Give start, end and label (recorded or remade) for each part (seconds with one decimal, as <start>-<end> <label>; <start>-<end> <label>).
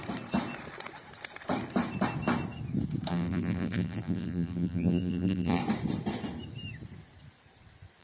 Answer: 0.0-3.1 recorded; 3.1-5.6 remade; 5.6-8.0 recorded